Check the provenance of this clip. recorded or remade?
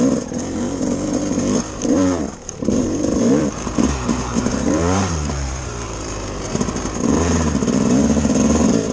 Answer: remade